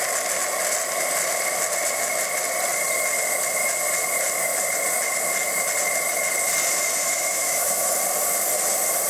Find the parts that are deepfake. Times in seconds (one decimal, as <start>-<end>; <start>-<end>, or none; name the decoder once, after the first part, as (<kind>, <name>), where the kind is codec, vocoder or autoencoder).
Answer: 7.0-8.0 (autoencoder, DAC-VAE)